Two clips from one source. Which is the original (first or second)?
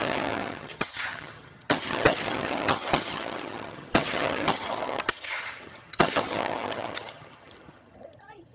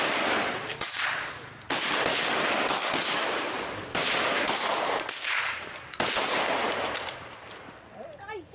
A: second